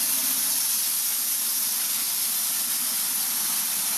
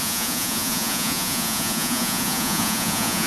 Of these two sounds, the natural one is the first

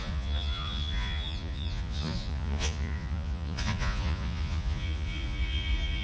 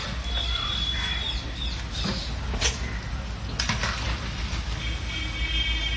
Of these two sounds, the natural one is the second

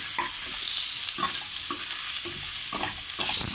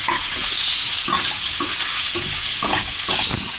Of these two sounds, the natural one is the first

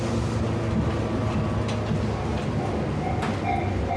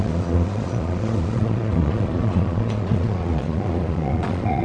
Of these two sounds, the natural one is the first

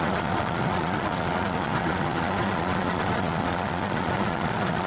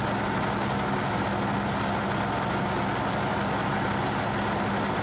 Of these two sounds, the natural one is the second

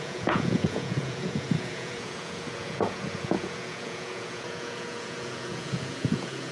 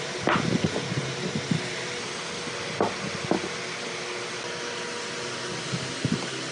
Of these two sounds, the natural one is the second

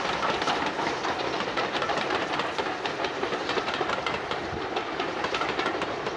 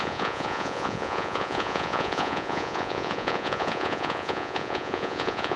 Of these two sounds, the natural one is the first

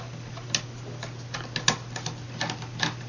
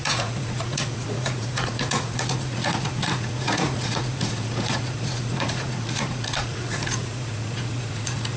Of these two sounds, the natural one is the first